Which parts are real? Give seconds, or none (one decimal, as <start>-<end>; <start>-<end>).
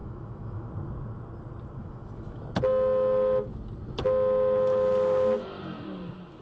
0.7-1.8; 2.4-6.4